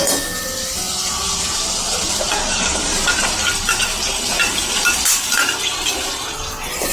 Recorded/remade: recorded